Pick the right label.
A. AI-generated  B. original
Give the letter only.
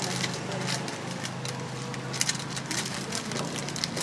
B